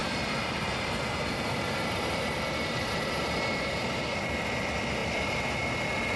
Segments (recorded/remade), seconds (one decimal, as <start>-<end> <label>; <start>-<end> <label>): 0.0-3.7 remade; 3.7-5.0 recorded; 5.0-5.6 remade; 5.6-6.2 recorded